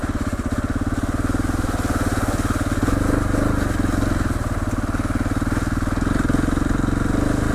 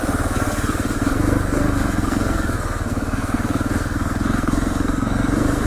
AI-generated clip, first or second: second